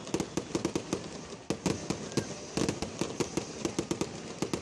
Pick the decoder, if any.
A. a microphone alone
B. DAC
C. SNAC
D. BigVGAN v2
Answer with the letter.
A